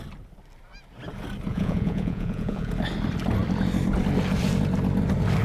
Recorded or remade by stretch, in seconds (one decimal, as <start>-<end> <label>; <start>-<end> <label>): 0.0-1.5 recorded; 1.5-2.7 remade; 2.7-5.4 recorded